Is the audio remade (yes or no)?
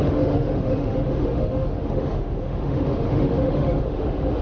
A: yes